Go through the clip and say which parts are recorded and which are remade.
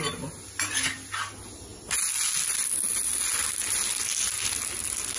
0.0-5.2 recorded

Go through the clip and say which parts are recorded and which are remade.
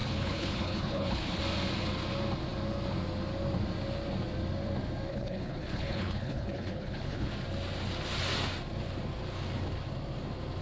0.0-1.4 remade; 1.4-5.1 recorded; 5.1-7.3 remade; 7.3-10.6 recorded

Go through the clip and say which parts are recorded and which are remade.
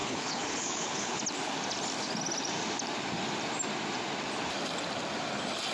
0.0-1.2 remade; 1.2-5.7 recorded